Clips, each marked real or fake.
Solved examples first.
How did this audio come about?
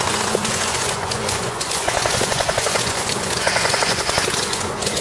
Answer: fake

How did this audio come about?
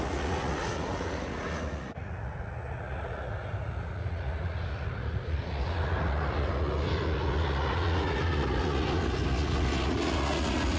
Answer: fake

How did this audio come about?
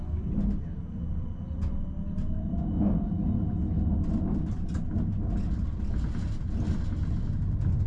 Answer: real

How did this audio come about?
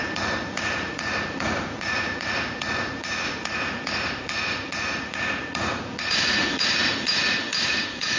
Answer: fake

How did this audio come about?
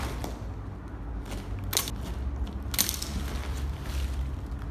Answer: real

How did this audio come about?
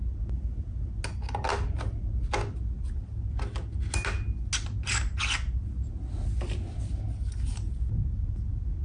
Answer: real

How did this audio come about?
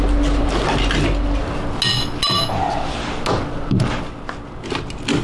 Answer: real